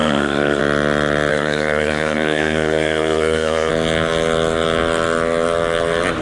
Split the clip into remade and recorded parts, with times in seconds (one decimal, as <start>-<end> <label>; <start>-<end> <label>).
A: 0.0-0.6 remade; 0.6-1.3 recorded; 1.3-3.7 remade; 3.7-6.2 recorded